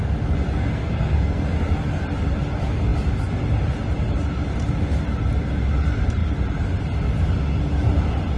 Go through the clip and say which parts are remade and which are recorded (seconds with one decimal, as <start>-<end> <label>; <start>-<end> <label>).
0.0-0.7 recorded; 0.7-1.4 remade; 1.4-8.4 recorded

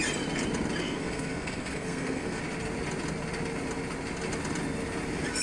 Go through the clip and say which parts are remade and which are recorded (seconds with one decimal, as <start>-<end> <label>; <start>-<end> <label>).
0.0-0.8 recorded; 0.8-2.4 remade; 2.4-5.4 recorded

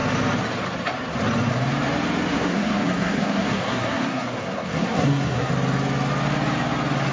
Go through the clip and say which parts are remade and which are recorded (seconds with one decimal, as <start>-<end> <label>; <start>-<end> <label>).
0.0-2.3 recorded; 2.3-5.5 remade; 5.5-7.1 recorded

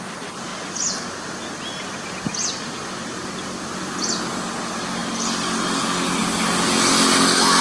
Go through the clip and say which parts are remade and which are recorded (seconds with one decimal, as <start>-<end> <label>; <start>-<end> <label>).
0.0-7.6 recorded

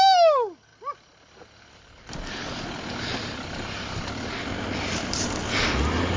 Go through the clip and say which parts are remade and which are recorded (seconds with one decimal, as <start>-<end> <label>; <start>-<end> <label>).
0.0-6.2 recorded

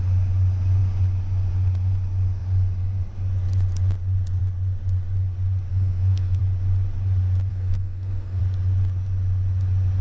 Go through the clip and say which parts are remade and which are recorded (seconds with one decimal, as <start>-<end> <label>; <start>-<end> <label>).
0.0-5.7 recorded; 5.7-6.4 remade; 6.4-7.5 recorded; 7.5-8.4 remade; 8.4-10.0 recorded

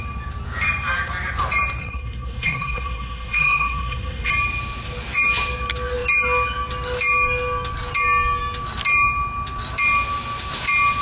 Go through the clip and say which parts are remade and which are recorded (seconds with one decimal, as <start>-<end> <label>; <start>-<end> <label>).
0.0-1.8 recorded; 1.8-4.3 remade; 4.3-11.0 recorded